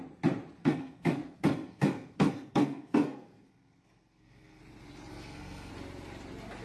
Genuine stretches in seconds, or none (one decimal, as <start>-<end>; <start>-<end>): 0.0-0.6; 4.6-5.1; 5.7-6.6